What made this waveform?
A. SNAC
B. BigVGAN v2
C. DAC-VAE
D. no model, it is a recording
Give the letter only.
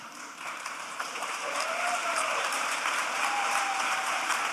B